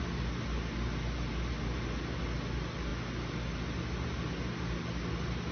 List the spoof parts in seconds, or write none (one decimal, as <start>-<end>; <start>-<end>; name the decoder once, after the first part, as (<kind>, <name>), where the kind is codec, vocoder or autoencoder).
none